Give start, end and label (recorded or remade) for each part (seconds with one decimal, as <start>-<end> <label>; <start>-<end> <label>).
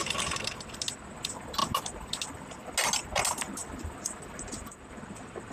0.0-5.5 recorded